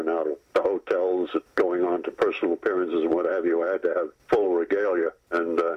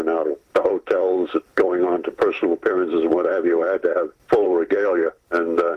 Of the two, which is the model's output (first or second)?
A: second